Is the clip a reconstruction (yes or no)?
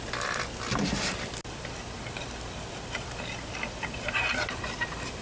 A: no